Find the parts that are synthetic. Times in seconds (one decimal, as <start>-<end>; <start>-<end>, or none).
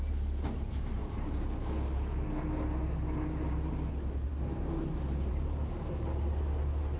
none